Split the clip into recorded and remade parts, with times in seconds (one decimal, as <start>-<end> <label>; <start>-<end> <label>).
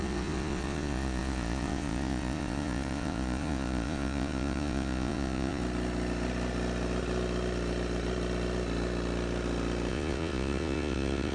0.0-5.6 remade; 5.6-9.9 recorded; 9.9-11.3 remade